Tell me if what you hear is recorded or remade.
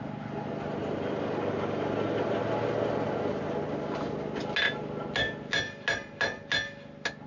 recorded